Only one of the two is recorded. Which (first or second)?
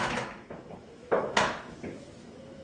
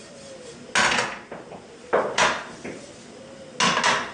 second